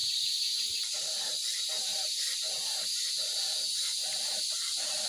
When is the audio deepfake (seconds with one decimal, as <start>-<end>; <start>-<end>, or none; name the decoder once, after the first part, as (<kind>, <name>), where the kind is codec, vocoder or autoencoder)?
0.0-3.1 (vocoder, BigVGAN v2); 4.0-4.5